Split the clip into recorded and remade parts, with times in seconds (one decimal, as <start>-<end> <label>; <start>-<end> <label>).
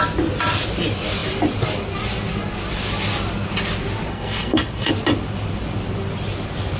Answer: 0.0-4.1 recorded; 4.1-4.9 remade; 4.9-6.8 recorded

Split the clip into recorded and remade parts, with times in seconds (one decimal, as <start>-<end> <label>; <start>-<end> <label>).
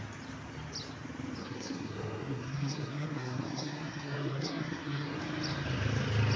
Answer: 0.0-1.4 recorded; 1.4-5.2 remade; 5.2-6.4 recorded